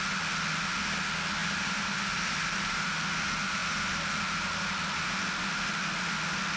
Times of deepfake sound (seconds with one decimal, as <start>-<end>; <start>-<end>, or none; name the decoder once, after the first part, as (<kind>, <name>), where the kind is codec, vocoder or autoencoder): 1.4-2.8 (vocoder, BigVGAN v2)

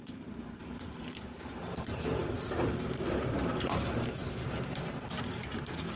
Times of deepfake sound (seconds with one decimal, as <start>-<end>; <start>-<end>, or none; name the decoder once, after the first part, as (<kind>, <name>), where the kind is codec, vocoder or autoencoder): 0.0-6.0 (vocoder, BigVGAN v2)

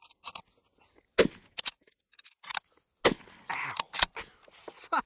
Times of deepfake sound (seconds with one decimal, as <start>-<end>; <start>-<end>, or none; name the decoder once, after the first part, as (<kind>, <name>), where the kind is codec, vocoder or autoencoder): none

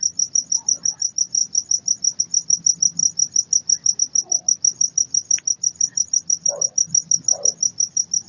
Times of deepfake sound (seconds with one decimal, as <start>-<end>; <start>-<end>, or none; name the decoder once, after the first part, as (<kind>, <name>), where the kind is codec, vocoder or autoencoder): none

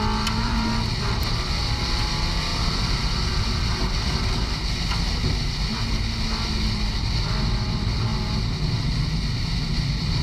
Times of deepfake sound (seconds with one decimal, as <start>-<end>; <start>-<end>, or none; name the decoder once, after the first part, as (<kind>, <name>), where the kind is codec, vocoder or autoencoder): none